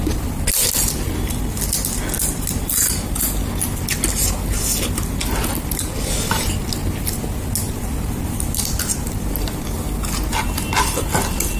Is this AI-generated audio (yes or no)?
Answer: no